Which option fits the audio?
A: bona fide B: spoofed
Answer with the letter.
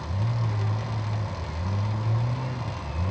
A